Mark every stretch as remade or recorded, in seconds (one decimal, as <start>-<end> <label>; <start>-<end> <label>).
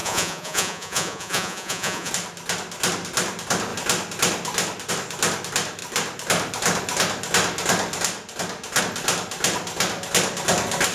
0.0-2.1 remade; 2.1-10.9 recorded